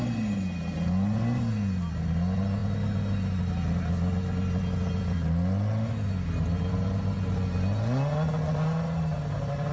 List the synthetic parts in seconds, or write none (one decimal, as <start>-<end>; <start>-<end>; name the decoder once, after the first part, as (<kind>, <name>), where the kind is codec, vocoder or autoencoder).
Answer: none